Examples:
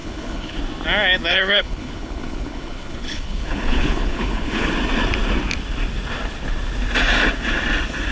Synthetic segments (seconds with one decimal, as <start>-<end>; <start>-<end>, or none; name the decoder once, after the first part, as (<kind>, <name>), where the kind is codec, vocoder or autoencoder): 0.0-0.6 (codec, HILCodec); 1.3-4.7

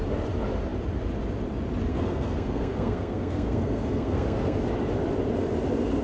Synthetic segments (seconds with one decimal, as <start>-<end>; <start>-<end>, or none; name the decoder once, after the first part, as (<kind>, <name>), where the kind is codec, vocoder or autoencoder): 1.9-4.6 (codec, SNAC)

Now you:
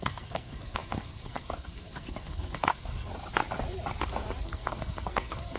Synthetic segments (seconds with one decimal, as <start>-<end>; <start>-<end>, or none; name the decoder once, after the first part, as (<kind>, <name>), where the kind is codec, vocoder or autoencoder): 0.0-3.1 (codec, SNAC); 4.4-5.6

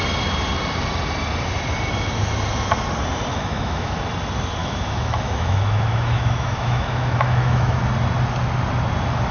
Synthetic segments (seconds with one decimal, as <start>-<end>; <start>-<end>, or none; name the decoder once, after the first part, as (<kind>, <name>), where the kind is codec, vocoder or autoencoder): 3.3-4.0 (autoencoder, DAC-VAE); 4.6-7.8

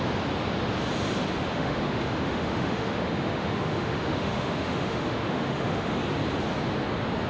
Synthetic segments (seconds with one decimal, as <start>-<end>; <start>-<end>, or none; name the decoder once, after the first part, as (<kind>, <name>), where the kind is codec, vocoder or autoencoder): 1.5-5.9 (autoencoder, DAC-VAE)

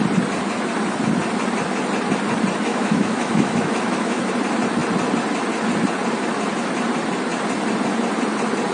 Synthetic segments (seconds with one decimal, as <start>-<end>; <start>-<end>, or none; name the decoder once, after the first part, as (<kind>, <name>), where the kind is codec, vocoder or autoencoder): 2.7-4.3 (autoencoder, DAC-VAE)

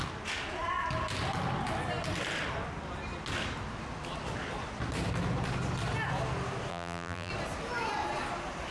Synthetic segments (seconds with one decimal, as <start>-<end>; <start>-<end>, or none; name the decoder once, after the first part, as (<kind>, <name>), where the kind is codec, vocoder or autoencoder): 6.7-7.3 (vocoder, BigVGAN v2)

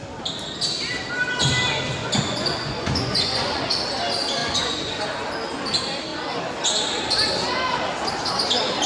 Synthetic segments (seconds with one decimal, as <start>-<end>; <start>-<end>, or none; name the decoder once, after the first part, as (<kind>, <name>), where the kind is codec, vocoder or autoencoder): 2.0-3.6 (vocoder, Vocos); 4.4-5.0